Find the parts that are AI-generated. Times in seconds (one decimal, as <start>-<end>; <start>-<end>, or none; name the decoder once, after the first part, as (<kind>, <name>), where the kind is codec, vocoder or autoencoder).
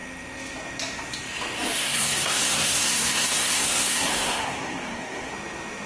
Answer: 1.8-5.3 (codec, SNAC)